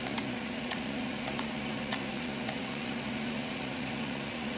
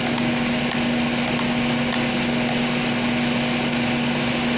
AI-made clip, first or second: first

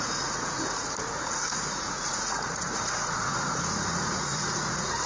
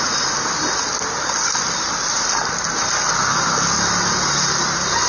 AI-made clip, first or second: first